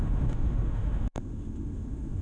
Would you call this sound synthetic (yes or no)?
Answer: yes